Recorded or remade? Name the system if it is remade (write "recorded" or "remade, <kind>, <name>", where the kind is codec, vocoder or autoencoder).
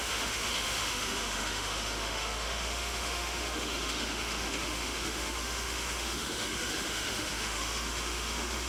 remade, autoencoder, DAC-VAE